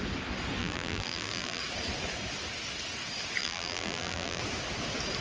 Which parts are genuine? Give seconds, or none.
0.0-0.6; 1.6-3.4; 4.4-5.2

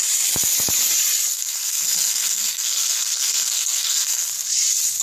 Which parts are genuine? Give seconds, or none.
0.0-1.3; 4.3-5.0

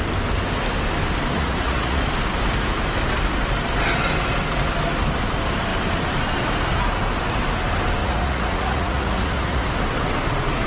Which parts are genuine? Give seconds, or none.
0.0-1.3; 2.0-8.0; 9.7-10.7

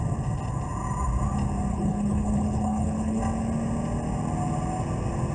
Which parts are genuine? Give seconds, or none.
0.0-1.7; 3.2-5.3

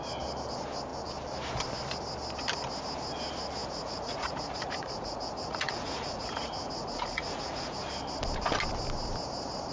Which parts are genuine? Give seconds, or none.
0.0-3.6; 7.8-9.7

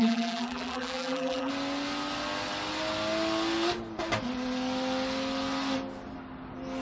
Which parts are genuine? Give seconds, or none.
1.5-6.8

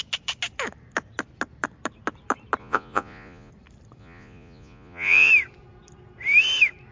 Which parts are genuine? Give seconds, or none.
0.0-2.6; 3.5-4.0; 5.3-6.9

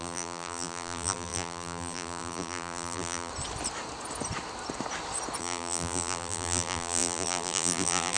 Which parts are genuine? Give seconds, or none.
3.3-5.4